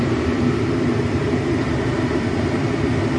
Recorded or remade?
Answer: remade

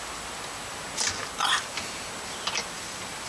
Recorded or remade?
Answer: recorded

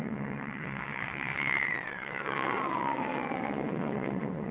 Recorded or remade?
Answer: remade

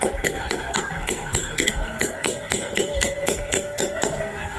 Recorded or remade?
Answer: remade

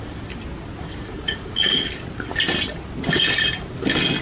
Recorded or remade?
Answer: recorded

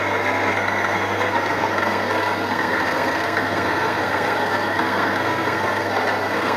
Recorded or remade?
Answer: remade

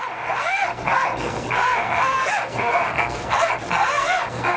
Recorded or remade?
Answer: remade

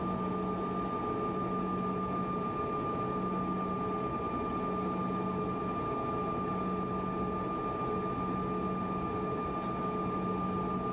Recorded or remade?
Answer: recorded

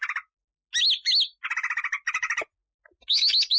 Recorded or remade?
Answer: recorded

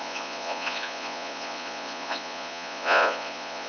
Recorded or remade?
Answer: remade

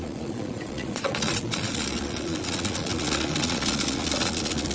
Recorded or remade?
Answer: remade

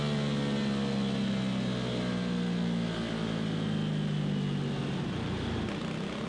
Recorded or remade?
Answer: recorded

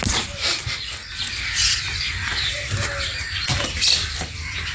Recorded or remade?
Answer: recorded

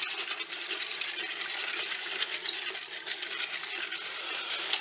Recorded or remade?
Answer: recorded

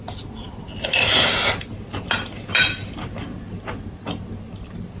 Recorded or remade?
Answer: recorded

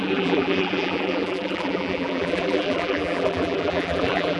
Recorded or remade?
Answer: remade